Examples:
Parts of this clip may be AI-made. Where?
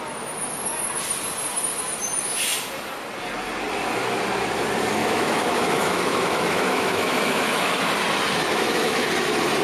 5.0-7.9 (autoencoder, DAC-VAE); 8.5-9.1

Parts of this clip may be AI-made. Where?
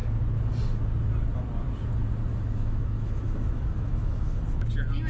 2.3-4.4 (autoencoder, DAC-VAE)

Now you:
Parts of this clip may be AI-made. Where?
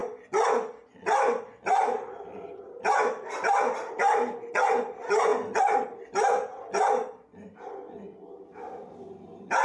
none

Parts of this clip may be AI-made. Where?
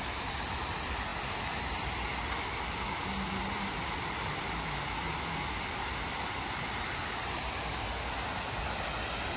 none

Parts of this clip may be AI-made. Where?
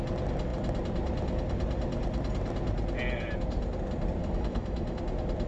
4.2-5.0 (autoencoder, DAC-VAE)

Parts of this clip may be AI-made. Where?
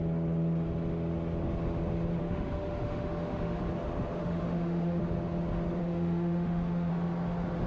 2.2-3.7 (autoencoder, DAC-VAE); 4.2-5.0; 5.8-6.9